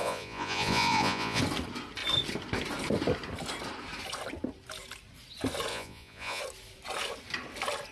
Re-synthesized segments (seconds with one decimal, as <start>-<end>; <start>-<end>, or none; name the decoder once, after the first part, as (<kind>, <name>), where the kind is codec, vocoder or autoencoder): 0.0-1.4 (vocoder, Vocos); 5.7-6.4